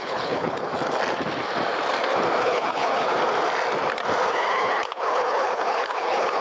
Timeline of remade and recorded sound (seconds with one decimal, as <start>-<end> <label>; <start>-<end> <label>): 0.0-0.7 remade; 0.7-2.4 recorded; 2.4-3.1 remade; 3.1-4.3 recorded; 4.3-6.4 remade